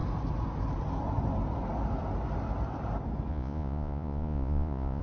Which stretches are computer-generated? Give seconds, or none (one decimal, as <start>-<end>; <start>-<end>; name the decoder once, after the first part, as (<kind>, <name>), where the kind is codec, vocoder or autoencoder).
3.3-5.0 (vocoder, Vocos)